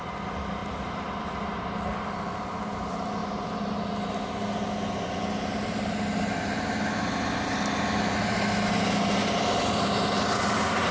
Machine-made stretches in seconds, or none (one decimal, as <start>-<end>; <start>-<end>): 0.6-1.4; 3.2-3.7